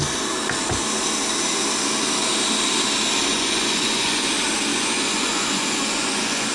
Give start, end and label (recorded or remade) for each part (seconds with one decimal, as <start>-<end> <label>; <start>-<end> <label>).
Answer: 0.0-3.3 recorded; 3.3-4.3 remade; 4.3-4.7 recorded; 4.7-6.5 remade